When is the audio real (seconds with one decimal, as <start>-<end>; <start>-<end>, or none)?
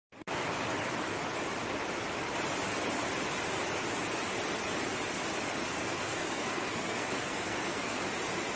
0.0-5.8; 8.0-8.6